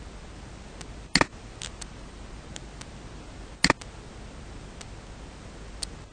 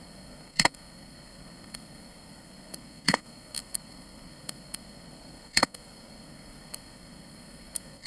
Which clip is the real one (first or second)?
first